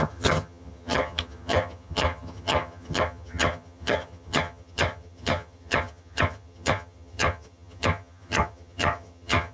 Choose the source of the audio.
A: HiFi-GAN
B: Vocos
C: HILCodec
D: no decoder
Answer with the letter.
A